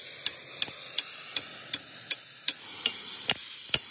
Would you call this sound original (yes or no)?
yes